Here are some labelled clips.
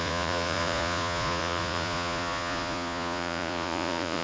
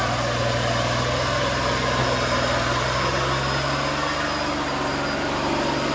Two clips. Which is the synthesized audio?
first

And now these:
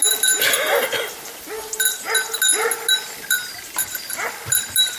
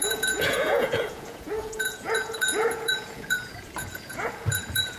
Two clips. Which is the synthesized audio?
second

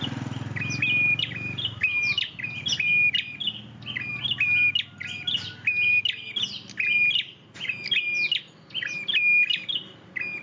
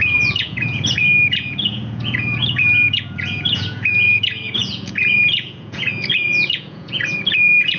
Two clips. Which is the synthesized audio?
second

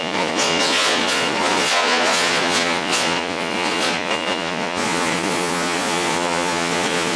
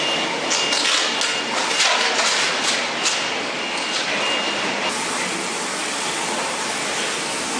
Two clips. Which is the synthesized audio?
first